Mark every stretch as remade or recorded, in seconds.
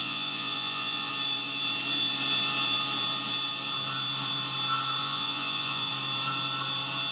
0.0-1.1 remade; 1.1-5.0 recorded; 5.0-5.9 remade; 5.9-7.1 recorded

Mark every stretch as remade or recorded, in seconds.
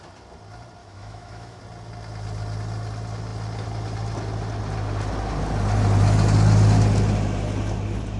0.0-0.8 recorded; 0.8-1.6 remade; 1.6-8.2 recorded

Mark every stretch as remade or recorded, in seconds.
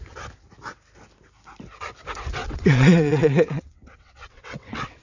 0.0-2.4 recorded; 2.4-5.0 remade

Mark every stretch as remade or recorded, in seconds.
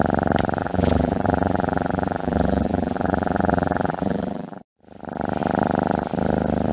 0.0-0.6 recorded; 0.6-4.6 remade; 4.6-6.7 recorded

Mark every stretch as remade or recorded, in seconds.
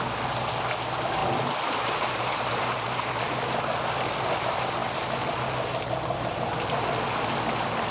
0.0-7.9 recorded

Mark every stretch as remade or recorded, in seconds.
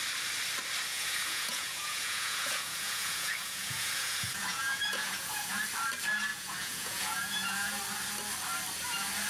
0.0-0.9 recorded; 0.9-5.6 remade; 5.6-6.3 recorded; 6.3-7.8 remade; 7.8-9.3 recorded